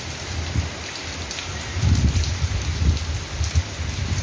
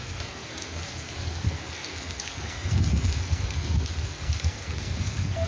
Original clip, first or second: first